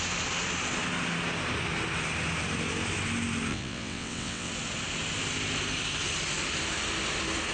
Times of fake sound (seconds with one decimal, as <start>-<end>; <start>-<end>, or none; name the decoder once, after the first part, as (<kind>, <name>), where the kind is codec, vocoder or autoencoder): 3.5-4.5 (vocoder, WaveNeXt)